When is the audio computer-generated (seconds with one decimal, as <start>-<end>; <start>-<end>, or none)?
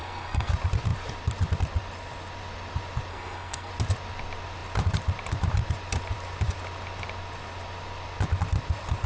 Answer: 0.0-0.5; 3.1-3.7